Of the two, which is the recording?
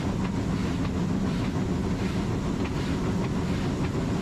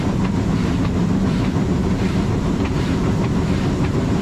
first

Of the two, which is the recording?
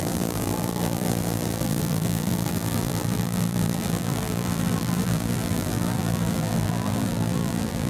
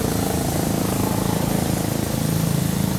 second